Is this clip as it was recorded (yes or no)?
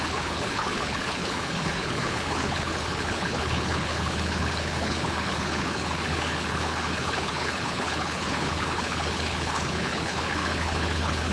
no